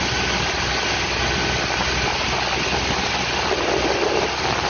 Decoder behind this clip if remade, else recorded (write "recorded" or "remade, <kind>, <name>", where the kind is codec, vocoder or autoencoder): recorded